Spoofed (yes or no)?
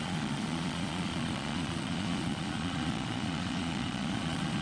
yes